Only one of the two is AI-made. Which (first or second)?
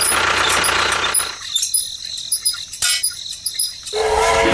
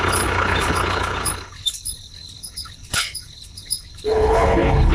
second